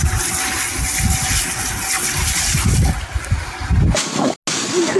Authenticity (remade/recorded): recorded